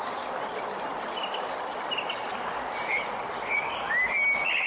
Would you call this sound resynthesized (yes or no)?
no